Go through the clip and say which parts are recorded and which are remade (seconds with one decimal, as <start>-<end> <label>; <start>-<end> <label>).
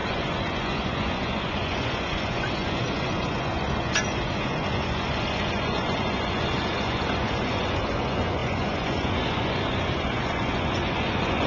0.0-11.5 remade